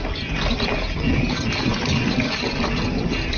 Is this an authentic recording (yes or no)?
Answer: yes